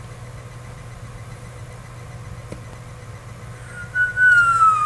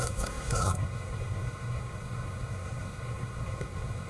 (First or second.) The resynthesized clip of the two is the second